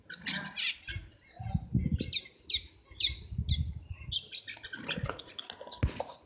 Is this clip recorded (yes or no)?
yes